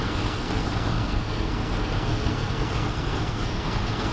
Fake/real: fake